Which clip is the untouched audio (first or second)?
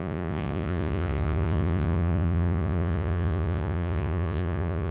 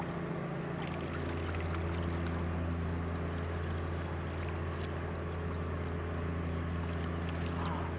second